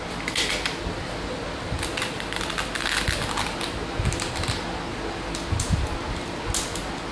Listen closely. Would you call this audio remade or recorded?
recorded